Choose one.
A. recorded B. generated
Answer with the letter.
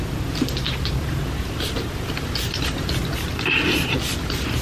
A